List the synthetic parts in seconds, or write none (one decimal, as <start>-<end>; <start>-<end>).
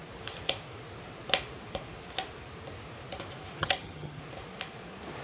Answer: 3.6-4.2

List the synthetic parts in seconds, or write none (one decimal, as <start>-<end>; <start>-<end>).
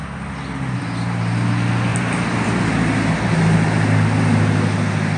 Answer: 1.9-2.6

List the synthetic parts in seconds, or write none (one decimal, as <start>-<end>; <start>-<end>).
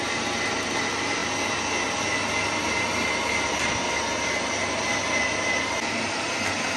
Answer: none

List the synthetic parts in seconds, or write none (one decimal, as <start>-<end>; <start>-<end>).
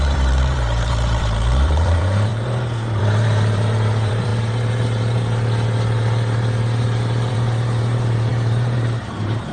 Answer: 0.0-9.5